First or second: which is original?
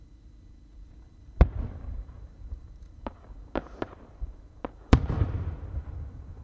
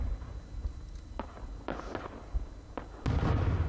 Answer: second